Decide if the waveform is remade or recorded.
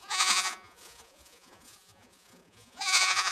remade